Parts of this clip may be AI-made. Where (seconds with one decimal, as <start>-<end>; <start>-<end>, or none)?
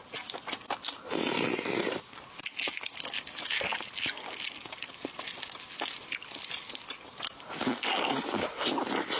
none